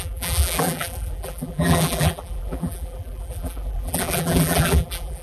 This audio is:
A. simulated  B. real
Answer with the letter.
A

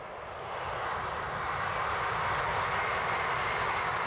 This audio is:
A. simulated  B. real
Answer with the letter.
B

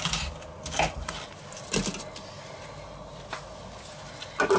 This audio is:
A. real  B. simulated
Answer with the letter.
A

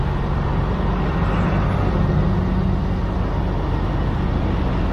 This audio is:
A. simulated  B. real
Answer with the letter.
B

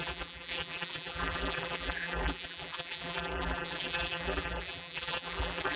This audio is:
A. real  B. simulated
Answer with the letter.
B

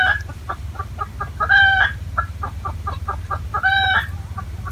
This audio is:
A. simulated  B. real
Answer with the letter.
A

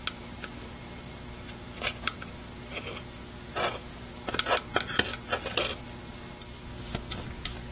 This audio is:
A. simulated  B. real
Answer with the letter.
B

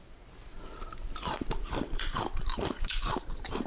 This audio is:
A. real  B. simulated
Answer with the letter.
B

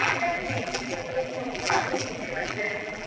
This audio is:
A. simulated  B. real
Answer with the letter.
A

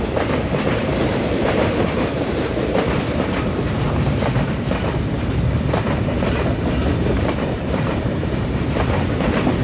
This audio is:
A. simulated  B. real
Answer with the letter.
A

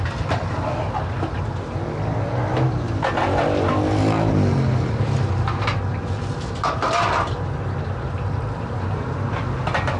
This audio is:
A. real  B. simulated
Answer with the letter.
A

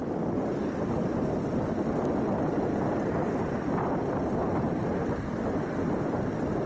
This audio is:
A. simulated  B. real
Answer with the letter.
A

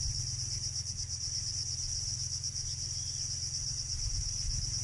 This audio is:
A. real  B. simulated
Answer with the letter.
B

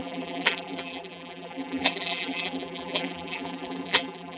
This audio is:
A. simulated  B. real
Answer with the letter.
A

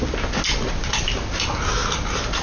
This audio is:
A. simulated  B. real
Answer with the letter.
B